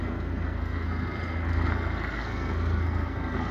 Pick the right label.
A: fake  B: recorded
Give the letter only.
A